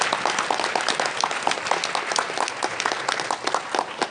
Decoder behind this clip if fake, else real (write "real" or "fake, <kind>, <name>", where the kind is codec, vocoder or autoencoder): real